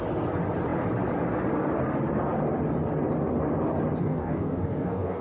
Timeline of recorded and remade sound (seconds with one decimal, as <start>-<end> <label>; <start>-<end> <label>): 0.0-4.0 recorded; 4.0-5.2 remade